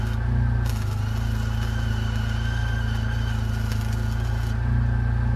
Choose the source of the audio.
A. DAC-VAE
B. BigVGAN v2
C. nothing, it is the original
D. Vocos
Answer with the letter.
C